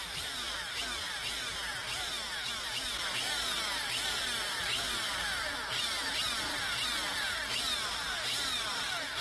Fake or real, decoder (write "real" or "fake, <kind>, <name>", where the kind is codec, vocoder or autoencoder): real